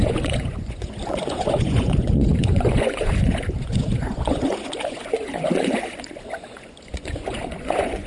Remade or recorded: remade